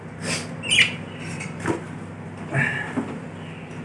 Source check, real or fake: real